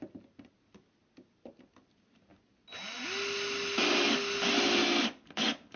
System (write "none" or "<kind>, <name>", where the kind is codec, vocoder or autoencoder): none